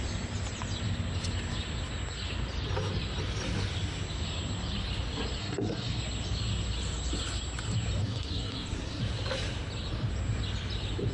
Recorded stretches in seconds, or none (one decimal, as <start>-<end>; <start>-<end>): 0.0-5.4; 6.0-8.0; 9.0-11.1